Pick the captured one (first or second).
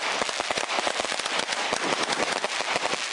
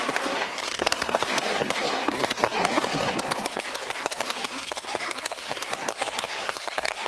first